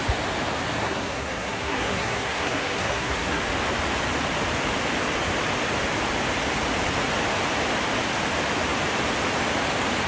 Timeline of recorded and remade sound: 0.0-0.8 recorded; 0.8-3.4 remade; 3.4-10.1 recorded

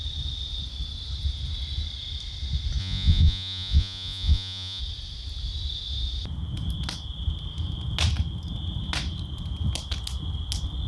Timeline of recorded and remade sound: 0.0-2.8 recorded; 2.8-4.8 remade; 4.8-10.9 recorded